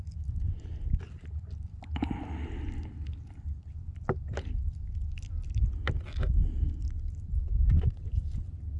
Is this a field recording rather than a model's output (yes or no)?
yes